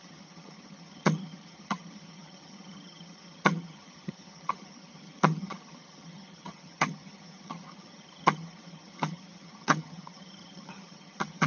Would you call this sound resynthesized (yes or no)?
yes